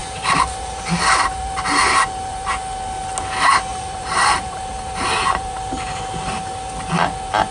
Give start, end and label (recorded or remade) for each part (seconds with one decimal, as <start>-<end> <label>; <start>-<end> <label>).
0.0-2.5 remade; 2.5-3.7 recorded; 3.7-6.0 remade; 6.0-7.5 recorded